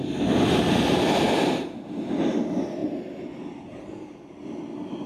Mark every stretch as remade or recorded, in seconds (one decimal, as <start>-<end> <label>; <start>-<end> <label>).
0.0-5.1 recorded